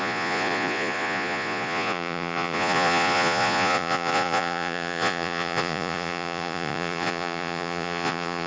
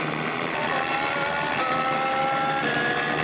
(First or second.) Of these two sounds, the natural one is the second